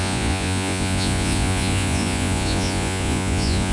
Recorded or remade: remade